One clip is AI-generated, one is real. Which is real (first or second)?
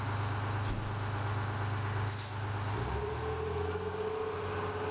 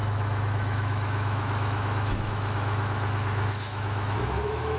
first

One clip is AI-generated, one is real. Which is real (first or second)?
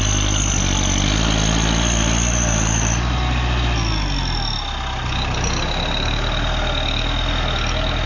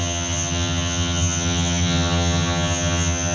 first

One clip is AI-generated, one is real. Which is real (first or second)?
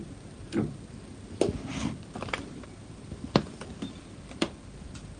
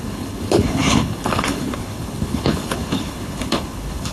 first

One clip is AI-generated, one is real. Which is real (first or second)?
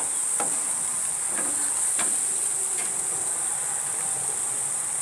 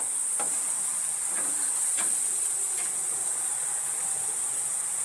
first